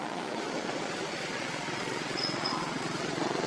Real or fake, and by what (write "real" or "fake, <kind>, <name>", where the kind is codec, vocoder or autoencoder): fake, vocoder, Vocos